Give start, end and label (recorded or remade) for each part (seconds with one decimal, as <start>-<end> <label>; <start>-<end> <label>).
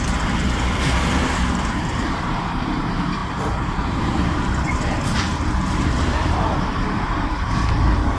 0.0-8.2 remade